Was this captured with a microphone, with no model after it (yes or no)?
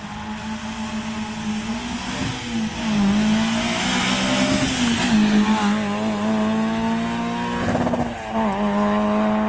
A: yes